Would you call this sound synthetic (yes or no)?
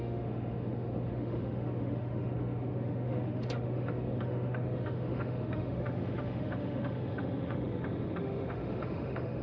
yes